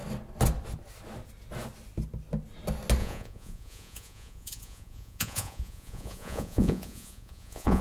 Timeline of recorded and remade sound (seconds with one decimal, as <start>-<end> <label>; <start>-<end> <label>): 0.0-3.0 recorded; 3.0-7.8 remade